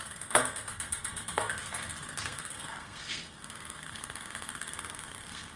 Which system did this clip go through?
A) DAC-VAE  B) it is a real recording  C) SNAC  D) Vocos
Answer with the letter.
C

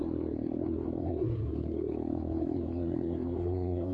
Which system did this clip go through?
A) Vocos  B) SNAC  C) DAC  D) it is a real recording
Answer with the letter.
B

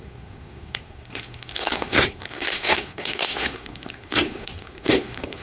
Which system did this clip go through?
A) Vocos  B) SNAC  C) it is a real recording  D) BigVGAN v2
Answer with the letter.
B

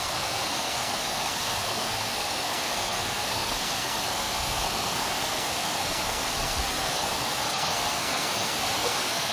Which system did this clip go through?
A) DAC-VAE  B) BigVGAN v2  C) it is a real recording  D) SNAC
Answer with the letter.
D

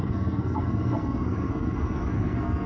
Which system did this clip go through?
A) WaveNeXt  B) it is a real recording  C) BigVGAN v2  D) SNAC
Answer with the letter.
D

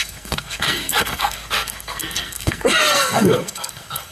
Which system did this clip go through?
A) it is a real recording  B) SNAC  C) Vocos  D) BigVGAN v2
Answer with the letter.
B